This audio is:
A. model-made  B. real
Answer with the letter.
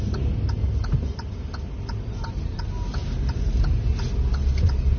B